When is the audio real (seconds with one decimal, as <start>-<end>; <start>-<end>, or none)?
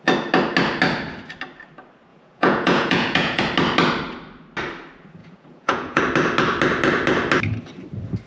0.0-2.1; 3.4-5.2; 6.0-8.3